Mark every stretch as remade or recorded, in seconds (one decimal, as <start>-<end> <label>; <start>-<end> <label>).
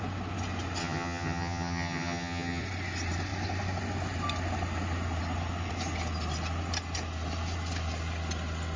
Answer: 0.0-0.8 recorded; 0.8-2.6 remade; 2.6-8.8 recorded